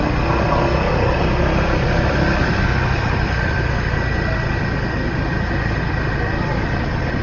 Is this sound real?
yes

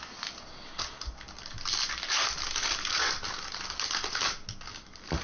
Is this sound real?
yes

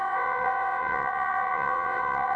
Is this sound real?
no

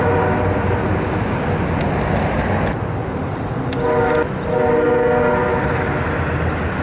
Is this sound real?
yes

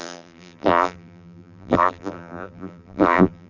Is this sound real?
no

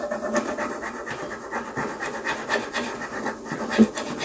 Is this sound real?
yes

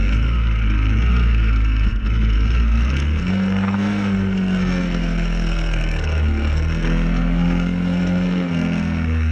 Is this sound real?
no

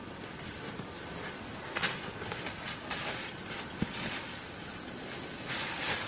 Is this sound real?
yes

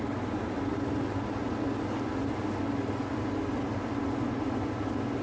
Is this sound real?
yes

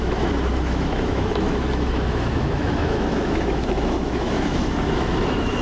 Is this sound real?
no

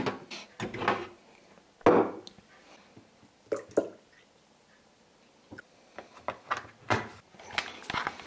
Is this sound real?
yes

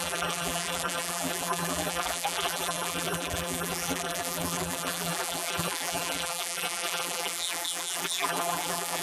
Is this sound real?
no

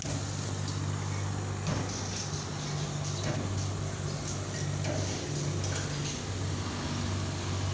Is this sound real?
yes